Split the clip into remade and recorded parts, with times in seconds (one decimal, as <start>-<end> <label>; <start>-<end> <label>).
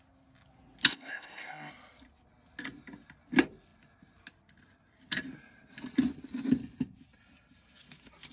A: 0.0-0.9 recorded; 0.9-1.7 remade; 1.7-8.3 recorded